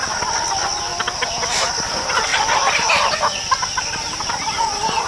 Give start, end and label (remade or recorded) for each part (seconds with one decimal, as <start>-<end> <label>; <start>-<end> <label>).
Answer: 0.0-2.3 recorded; 2.3-3.8 remade; 3.8-5.1 recorded